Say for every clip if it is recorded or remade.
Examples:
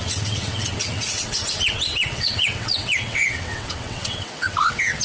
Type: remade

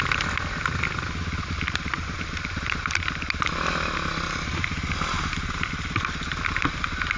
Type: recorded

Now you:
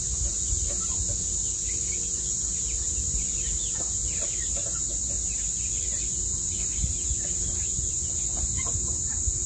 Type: recorded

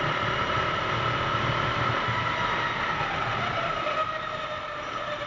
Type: recorded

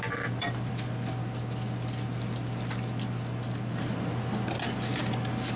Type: recorded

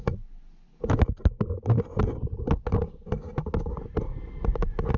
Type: recorded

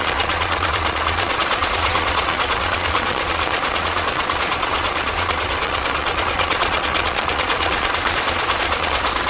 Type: remade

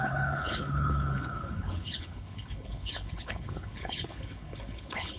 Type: remade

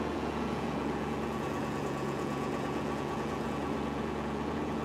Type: remade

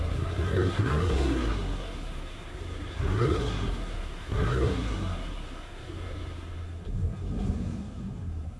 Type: remade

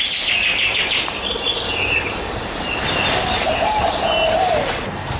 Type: recorded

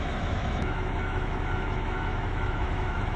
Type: remade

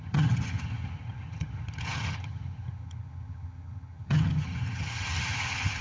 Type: remade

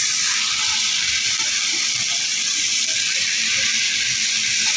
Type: recorded